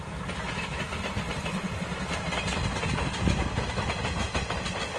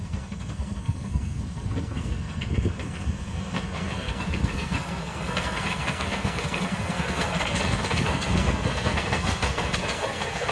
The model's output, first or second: second